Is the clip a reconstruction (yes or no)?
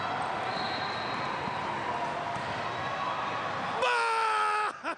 no